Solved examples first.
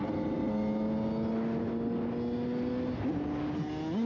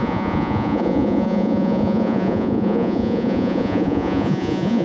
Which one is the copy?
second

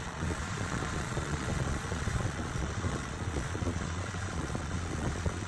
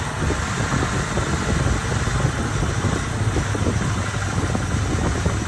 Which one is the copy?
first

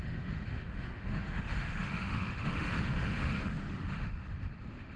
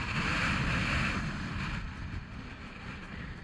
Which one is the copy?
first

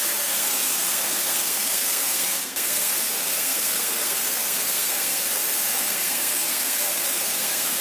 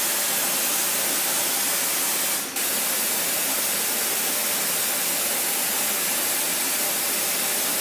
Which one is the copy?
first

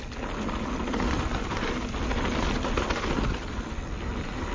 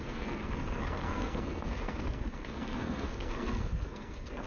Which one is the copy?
second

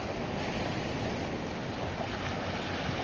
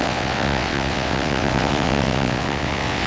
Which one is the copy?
second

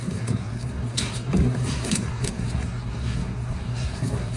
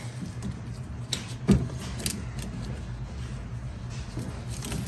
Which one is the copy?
first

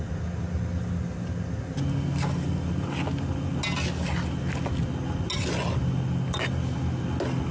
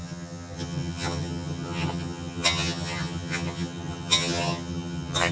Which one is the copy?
second